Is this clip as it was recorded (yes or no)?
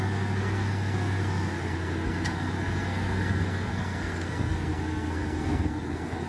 no